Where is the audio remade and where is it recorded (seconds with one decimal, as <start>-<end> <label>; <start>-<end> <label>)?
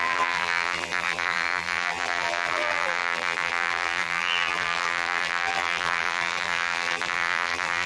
0.0-7.9 remade